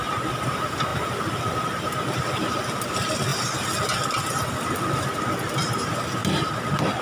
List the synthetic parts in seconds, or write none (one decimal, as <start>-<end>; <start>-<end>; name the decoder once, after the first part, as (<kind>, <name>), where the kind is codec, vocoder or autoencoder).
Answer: none